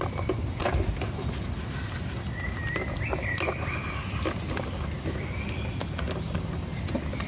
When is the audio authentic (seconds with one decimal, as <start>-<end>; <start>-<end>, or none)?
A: 0.0-7.3